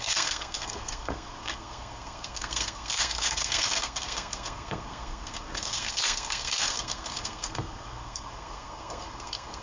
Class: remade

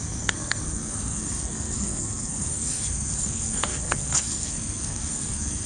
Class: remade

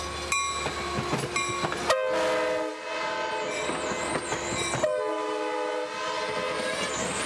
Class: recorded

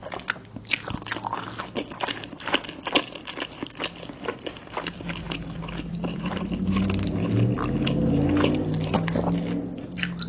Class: recorded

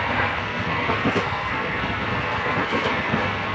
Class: remade